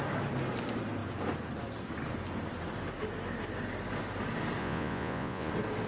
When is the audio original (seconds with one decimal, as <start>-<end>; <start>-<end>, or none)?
0.0-4.6; 5.5-5.9